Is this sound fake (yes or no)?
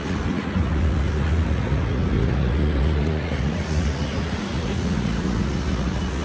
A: yes